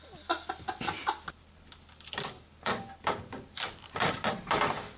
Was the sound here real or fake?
real